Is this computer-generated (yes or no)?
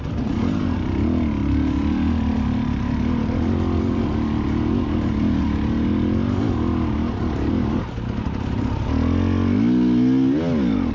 no